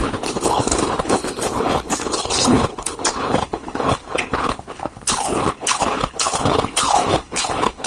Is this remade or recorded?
remade